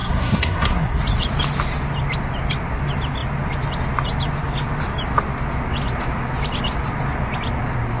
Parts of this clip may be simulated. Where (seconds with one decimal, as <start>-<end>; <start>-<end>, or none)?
0.0-1.0